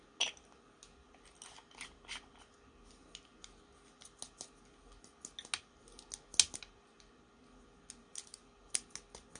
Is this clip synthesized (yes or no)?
no